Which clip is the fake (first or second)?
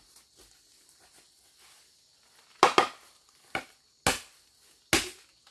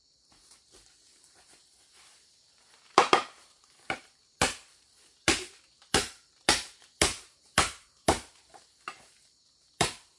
second